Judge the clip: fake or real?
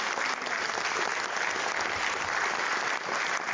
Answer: real